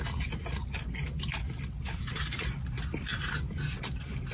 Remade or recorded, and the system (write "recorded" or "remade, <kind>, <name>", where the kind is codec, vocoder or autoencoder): recorded